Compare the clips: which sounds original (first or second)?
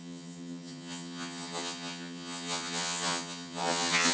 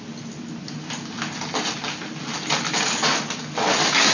second